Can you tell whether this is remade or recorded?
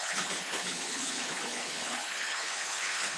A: remade